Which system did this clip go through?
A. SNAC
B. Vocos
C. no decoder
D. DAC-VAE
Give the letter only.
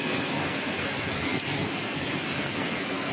A